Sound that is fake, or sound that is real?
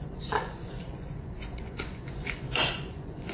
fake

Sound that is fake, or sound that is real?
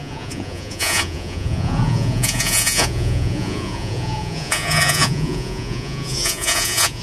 fake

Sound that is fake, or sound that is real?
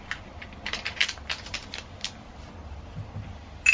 real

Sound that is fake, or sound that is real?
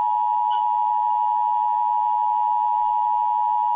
fake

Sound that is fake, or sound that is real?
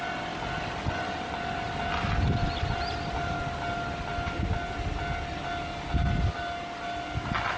real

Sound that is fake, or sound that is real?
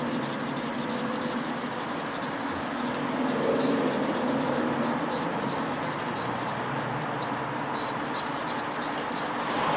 fake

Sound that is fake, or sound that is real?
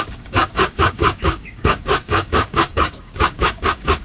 fake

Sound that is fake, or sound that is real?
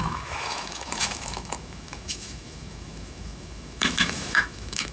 fake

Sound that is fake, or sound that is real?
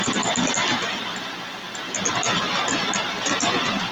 real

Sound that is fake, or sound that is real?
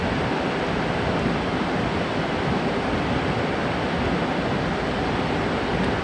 real